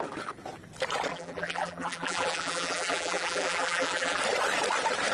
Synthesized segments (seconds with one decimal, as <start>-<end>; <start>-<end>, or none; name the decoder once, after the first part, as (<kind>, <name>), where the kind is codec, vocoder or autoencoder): 1.1-4.2 (vocoder, BigVGAN v2)